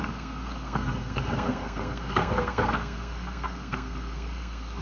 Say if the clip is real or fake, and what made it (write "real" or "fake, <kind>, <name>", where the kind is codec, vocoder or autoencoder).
fake, codec, SNAC